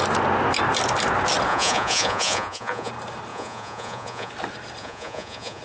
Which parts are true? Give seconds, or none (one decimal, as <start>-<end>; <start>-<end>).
0.0-1.5; 2.9-3.3; 4.3-4.8